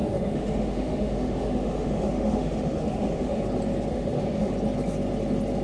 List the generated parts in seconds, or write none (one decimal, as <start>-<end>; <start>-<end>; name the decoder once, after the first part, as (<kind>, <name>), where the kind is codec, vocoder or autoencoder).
0.0-3.4 (autoencoder, DAC-VAE); 3.9-4.5